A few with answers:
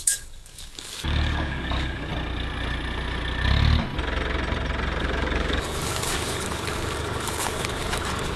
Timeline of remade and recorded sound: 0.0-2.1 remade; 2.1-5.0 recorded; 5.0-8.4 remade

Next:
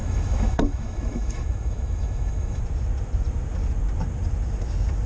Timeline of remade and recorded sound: 0.0-2.6 remade; 2.6-5.1 recorded

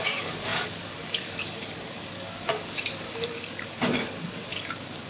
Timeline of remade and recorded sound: 0.0-5.1 remade